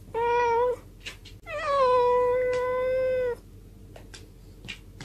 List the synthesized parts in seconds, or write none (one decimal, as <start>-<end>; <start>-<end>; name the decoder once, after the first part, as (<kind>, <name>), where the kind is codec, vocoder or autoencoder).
none